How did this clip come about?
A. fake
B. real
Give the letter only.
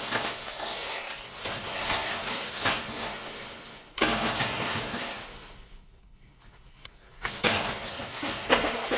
A